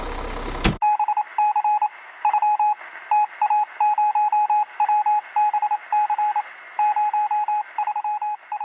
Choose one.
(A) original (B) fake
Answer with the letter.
A